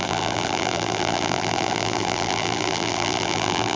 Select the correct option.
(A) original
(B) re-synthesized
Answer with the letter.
B